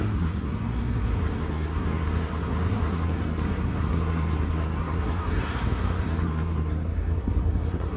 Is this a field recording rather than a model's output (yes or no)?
no